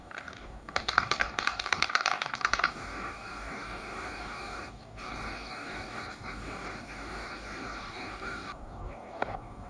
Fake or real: fake